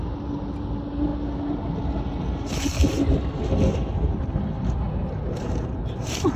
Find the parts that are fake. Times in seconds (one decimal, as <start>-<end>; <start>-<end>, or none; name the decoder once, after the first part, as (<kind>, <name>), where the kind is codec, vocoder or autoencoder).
none